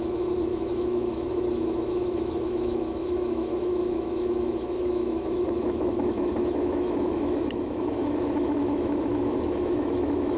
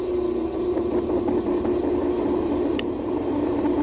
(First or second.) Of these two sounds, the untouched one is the second